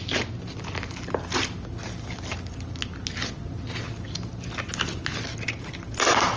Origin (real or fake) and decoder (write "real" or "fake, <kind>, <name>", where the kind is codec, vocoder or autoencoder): real